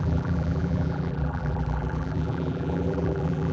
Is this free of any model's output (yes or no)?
no